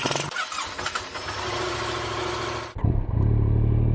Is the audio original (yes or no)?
yes